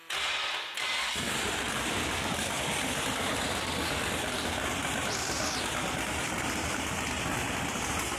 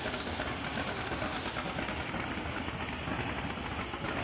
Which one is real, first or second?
second